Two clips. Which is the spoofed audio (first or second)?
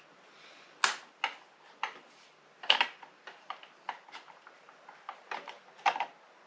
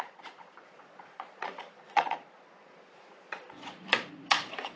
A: second